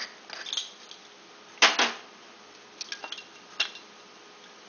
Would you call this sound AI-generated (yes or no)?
no